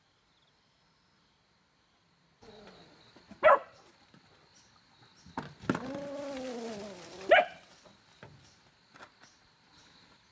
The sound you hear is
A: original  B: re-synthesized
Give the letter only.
A